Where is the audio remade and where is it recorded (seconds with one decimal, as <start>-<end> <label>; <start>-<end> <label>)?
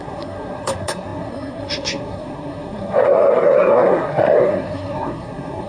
0.0-5.7 remade